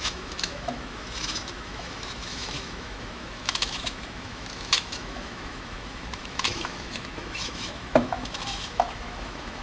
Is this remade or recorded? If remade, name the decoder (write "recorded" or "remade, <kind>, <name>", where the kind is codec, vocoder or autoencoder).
remade, autoencoder, DAC-VAE